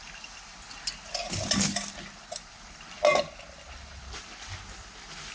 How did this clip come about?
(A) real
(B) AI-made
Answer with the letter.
A